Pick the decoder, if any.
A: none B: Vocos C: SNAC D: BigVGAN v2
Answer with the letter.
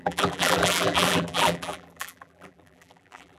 D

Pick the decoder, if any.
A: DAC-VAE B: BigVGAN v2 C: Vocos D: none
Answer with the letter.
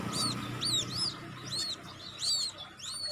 D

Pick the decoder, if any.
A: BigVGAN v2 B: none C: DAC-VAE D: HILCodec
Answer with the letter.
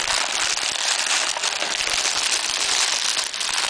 B